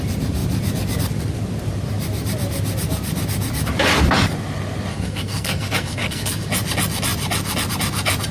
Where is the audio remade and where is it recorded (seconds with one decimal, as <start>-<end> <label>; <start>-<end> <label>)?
0.0-4.9 recorded; 4.9-6.5 remade; 6.5-8.3 recorded

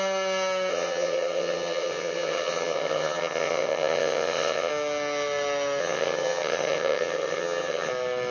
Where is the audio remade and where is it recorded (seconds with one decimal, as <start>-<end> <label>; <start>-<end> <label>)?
0.0-0.7 recorded; 0.7-4.7 remade; 4.7-5.8 recorded; 5.8-7.9 remade; 7.9-8.3 recorded

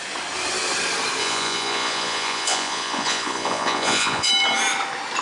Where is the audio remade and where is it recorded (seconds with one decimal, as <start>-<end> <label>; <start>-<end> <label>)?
0.0-1.2 recorded; 1.2-4.3 remade; 4.3-5.2 recorded

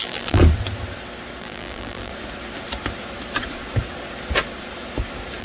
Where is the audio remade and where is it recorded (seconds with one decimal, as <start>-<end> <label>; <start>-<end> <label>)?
0.0-0.4 remade; 0.4-1.4 recorded; 1.4-2.1 remade; 2.1-5.4 recorded

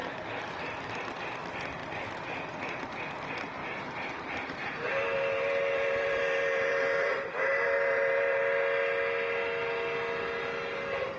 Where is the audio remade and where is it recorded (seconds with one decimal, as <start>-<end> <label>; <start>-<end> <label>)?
0.0-3.6 recorded; 3.6-8.4 remade; 8.4-11.2 recorded

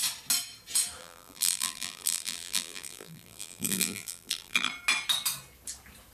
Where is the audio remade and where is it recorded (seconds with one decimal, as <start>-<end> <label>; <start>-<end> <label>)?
0.0-1.0 recorded; 1.0-4.7 remade; 4.7-6.1 recorded

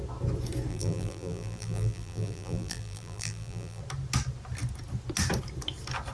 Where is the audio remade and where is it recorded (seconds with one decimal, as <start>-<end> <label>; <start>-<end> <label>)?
0.0-0.7 recorded; 0.7-3.8 remade; 3.8-6.1 recorded

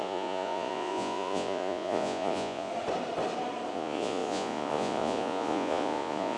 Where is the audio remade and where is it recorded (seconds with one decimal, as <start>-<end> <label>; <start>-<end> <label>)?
0.0-2.7 remade; 2.7-3.7 recorded; 3.7-6.4 remade